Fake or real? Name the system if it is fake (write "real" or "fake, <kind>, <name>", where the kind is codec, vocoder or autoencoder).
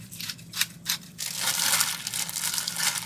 real